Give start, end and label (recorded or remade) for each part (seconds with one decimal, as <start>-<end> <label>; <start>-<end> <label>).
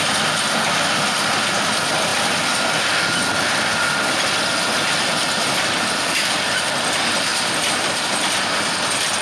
0.0-5.2 recorded; 5.2-5.7 remade; 5.7-7.3 recorded; 7.3-8.1 remade; 8.1-9.2 recorded